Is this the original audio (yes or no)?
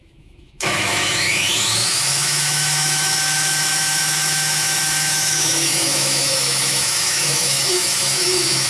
no